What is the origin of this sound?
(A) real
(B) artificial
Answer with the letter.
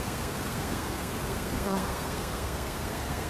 B